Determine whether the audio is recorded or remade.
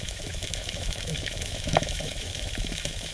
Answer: remade